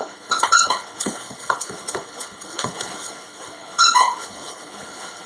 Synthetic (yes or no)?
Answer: yes